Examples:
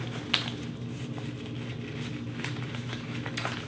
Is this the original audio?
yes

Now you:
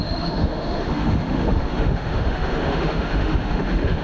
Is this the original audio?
no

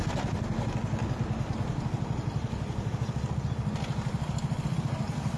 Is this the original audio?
yes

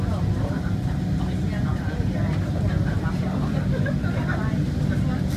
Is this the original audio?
yes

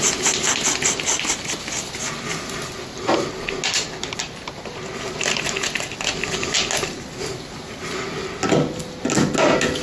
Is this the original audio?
yes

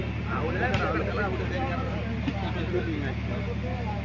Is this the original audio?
yes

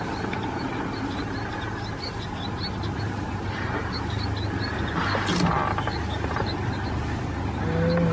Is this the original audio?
yes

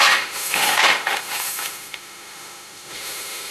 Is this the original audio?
no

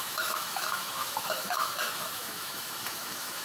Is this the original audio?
no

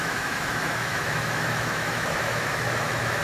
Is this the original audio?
no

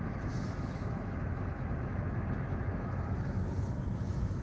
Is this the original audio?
no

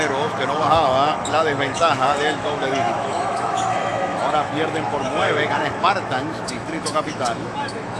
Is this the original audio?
no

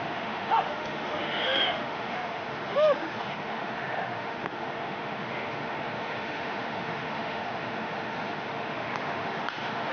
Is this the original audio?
no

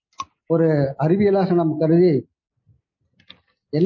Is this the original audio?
yes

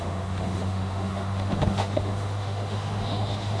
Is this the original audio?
no